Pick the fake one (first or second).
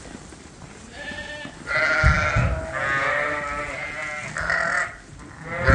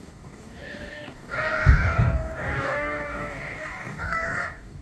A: second